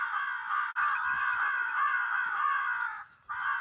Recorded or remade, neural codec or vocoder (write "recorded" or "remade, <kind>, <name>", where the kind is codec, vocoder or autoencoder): recorded